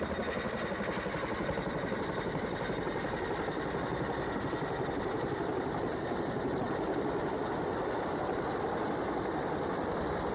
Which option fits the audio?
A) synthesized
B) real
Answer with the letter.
B